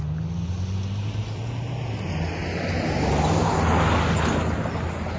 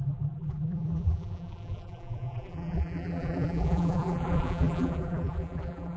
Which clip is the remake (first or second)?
second